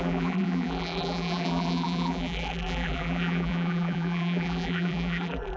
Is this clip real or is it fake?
fake